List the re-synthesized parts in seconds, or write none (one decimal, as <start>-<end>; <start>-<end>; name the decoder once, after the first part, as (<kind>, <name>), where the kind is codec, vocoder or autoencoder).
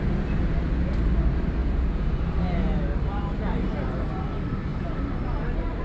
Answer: 1.6-2.2 (vocoder, Vocos)